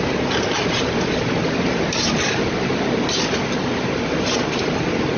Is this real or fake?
real